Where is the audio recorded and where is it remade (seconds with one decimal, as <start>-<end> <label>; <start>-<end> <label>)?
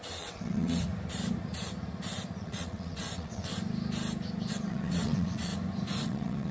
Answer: 0.0-0.9 remade; 0.9-2.4 recorded; 2.4-3.5 remade; 3.5-4.5 recorded; 4.5-5.5 remade; 5.5-6.0 recorded; 6.0-6.5 remade